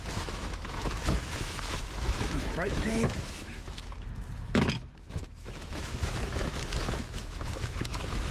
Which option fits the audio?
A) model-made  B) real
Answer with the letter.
A